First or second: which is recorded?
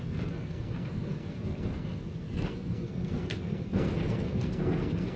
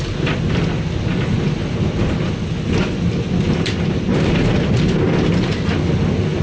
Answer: second